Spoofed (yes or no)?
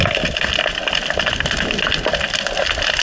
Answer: no